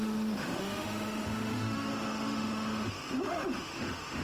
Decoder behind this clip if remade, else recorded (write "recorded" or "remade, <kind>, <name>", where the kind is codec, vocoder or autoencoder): remade, autoencoder, DAC-VAE